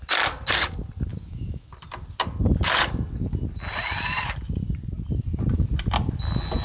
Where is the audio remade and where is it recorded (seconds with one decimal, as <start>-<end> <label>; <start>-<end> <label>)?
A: 0.0-1.1 recorded; 1.1-1.7 remade; 1.7-6.6 recorded